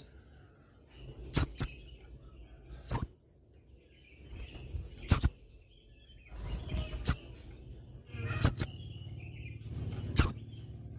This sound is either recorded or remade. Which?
recorded